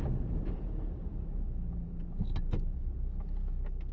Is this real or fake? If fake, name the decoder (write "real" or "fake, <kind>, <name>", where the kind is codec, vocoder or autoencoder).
real